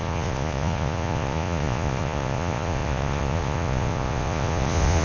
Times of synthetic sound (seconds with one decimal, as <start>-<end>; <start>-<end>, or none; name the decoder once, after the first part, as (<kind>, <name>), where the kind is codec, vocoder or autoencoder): 0.0-5.0 (vocoder, Vocos)

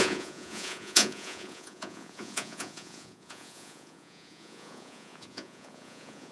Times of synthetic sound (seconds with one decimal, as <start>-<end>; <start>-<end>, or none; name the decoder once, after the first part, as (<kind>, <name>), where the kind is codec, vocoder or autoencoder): 0.0-6.3 (vocoder, Vocos)

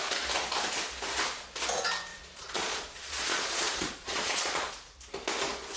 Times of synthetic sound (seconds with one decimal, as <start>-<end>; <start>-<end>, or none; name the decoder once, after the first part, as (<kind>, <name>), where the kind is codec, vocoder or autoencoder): 2.1-4.7 (vocoder, Vocos)

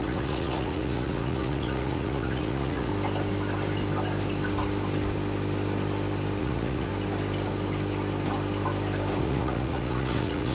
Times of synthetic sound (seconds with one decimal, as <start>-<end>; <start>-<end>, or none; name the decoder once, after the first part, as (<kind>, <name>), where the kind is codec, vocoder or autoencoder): 0.0-2.9 (vocoder, Vocos); 6.4-6.9; 9.2-10.5

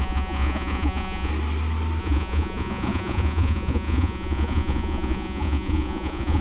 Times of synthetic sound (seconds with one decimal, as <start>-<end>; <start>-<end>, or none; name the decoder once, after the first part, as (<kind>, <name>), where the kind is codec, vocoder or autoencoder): 0.0-1.3 (vocoder, Vocos); 2.0-6.4

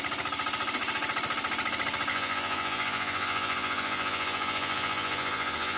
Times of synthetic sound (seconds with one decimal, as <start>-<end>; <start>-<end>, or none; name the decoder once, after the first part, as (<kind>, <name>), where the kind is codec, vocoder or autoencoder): 2.1-5.8 (vocoder, Vocos)